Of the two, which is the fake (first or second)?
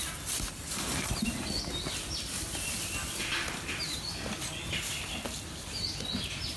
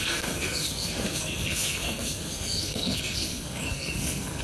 second